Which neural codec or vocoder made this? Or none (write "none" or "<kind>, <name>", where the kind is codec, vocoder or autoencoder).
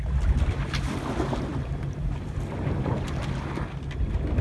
none